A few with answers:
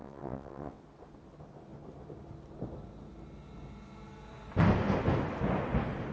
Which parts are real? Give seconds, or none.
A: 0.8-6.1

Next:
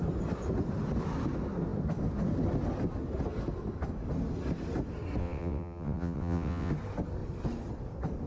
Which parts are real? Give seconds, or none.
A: 0.0-5.2; 6.7-8.3